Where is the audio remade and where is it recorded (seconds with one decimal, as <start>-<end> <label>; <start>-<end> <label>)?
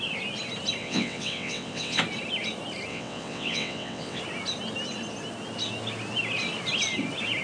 0.0-0.8 recorded; 0.8-2.0 remade; 2.0-2.9 recorded; 2.9-4.2 remade; 4.2-7.4 recorded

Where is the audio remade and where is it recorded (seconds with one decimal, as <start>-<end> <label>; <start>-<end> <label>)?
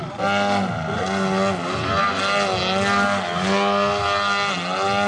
0.0-5.1 recorded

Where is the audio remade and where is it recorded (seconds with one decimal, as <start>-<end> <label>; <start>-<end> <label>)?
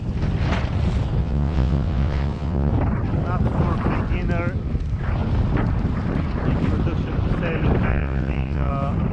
0.0-1.2 recorded; 1.2-2.7 remade; 2.7-7.9 recorded; 7.9-8.7 remade; 8.7-9.1 recorded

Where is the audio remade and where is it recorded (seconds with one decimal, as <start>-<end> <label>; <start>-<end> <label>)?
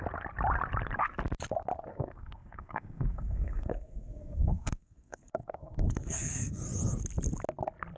0.0-1.9 recorded; 1.9-6.6 remade; 6.6-8.0 recorded